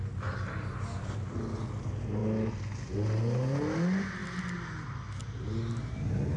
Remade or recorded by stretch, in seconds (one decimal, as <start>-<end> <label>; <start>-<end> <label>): 0.0-6.4 recorded